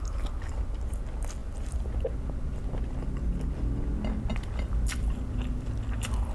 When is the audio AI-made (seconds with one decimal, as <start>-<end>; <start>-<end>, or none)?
1.4-2.1; 4.3-6.3